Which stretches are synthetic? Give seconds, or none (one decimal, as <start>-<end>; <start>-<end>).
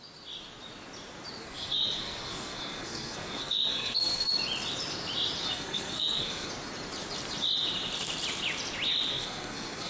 1.4-4.3; 5.4-6.5; 9.1-9.9